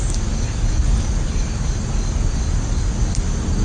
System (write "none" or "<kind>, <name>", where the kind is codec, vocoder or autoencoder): none